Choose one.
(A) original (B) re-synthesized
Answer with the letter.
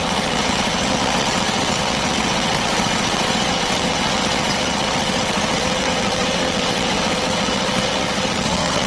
B